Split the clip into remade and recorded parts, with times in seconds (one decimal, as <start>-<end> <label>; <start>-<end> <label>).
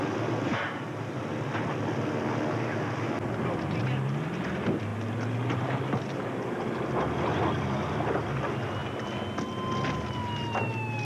0.0-0.5 recorded; 0.5-1.2 remade; 1.2-11.0 recorded